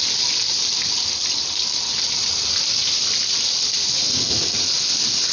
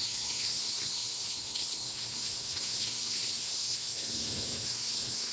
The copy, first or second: second